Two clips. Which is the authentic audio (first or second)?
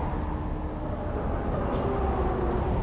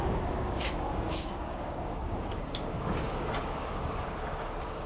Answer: first